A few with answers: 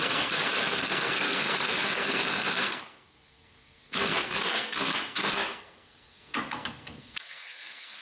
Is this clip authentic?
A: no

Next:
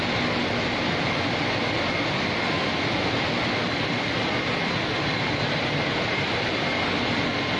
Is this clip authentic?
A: yes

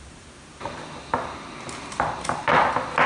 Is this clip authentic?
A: yes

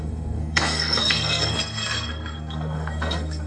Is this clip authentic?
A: no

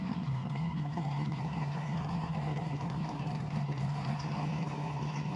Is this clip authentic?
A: no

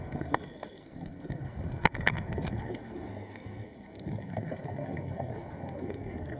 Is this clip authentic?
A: no